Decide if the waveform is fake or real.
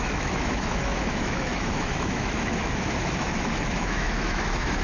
fake